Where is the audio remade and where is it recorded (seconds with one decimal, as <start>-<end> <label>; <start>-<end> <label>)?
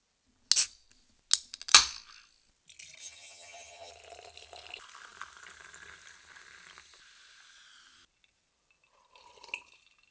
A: 0.0-3.0 recorded; 3.0-3.9 remade; 3.9-10.1 recorded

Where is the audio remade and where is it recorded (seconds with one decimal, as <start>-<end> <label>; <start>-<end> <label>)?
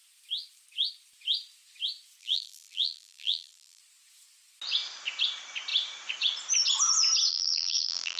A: 0.0-2.2 recorded; 2.2-3.8 remade; 3.8-7.3 recorded; 7.3-8.2 remade